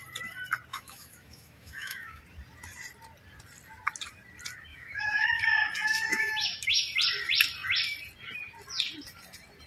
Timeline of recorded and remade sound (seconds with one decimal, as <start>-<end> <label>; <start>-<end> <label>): 0.0-0.7 recorded; 0.7-2.2 remade; 2.2-4.7 recorded; 4.7-5.4 remade; 5.4-6.1 recorded; 6.1-6.8 remade; 6.8-9.7 recorded